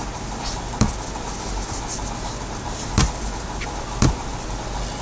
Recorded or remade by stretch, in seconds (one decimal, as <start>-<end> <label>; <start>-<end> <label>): 0.0-5.0 recorded